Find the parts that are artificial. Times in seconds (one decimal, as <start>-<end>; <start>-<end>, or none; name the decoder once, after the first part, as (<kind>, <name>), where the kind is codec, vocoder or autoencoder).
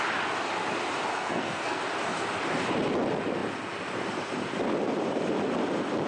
1.1-1.8 (codec, SNAC)